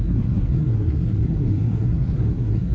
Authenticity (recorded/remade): remade